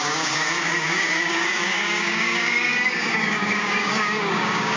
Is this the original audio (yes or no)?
no